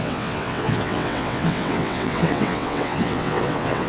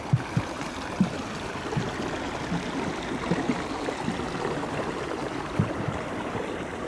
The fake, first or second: first